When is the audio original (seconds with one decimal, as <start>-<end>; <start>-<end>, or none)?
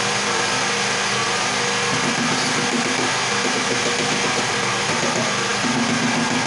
0.0-6.5